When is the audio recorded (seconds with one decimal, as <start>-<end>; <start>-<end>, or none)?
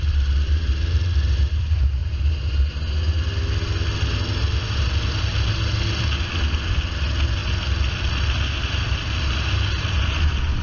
0.0-10.6